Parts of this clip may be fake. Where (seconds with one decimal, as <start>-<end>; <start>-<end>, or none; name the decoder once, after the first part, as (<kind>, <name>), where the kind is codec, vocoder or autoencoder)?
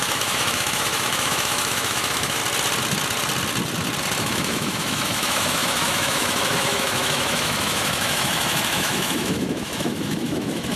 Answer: 0.0-2.4 (autoencoder, DAC-VAE); 4.2-10.8